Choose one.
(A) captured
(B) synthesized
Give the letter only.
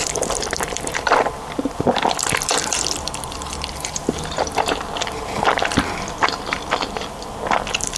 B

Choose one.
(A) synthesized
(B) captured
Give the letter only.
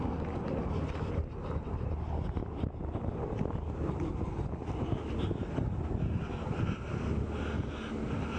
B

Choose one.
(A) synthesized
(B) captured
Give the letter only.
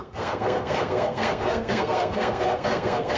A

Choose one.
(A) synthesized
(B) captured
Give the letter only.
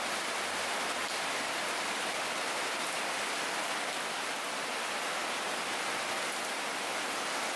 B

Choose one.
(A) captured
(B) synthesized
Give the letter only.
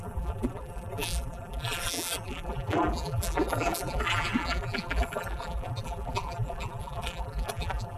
B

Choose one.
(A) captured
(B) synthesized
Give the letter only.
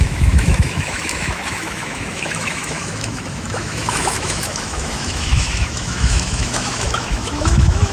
B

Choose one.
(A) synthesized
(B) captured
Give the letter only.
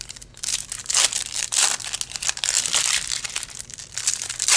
B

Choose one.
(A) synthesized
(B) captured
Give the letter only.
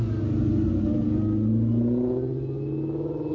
B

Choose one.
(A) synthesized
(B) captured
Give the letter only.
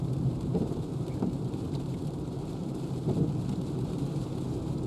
A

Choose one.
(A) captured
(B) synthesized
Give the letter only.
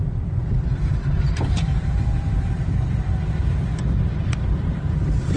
B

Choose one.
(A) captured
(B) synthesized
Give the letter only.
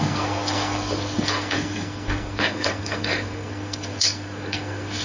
B